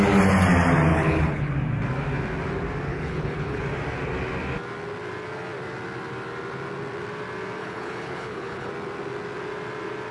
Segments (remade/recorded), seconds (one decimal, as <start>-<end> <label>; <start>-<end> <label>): 0.0-0.9 recorded; 0.9-1.5 remade; 1.5-2.9 recorded; 2.9-3.6 remade; 3.6-7.6 recorded; 7.6-8.7 remade; 8.7-10.1 recorded